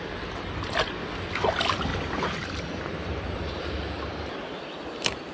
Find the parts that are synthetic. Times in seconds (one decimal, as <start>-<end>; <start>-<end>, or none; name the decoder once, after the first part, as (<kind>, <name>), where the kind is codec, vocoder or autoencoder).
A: 1.9-3.5 (vocoder, BigVGAN v2)